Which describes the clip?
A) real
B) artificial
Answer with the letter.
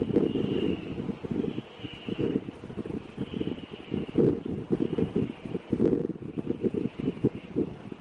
A